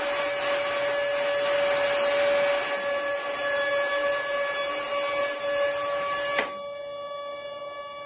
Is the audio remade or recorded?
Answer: recorded